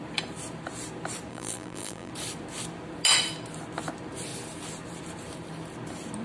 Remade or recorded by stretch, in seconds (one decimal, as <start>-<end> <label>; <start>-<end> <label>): 0.0-1.3 recorded; 1.3-2.1 remade; 2.1-6.2 recorded